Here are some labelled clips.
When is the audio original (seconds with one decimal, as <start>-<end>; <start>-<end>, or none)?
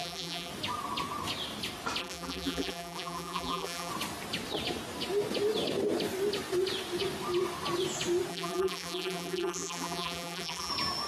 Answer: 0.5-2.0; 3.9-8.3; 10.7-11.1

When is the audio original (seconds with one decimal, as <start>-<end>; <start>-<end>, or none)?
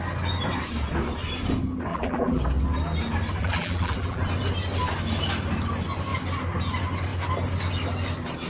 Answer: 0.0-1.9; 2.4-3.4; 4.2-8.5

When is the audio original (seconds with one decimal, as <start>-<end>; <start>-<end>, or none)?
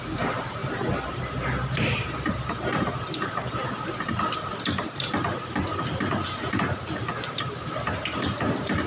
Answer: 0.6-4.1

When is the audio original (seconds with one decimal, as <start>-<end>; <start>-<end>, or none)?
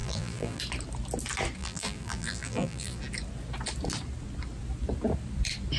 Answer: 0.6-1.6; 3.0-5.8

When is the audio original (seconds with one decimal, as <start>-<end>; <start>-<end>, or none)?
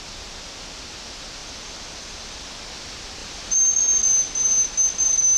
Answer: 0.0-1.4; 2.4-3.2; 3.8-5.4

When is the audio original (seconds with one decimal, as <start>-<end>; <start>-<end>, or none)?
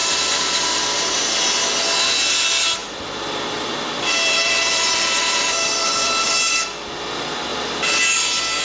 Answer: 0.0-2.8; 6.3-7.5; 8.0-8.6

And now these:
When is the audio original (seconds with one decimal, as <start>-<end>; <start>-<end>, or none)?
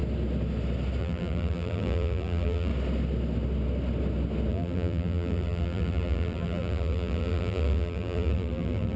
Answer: 0.0-1.0; 2.7-4.5